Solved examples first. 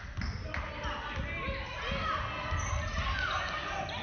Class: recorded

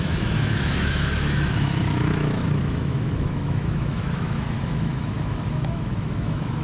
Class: remade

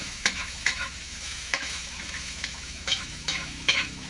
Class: remade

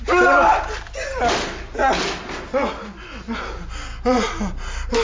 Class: recorded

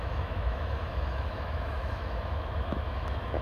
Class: remade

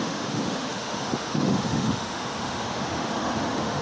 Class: remade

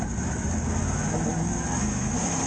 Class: recorded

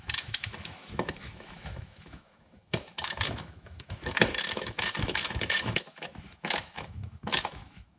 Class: remade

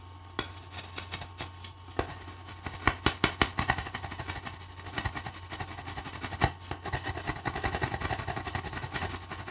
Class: recorded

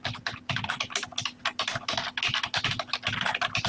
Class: recorded